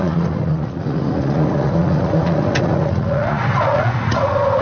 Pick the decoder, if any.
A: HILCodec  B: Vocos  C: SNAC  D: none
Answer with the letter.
B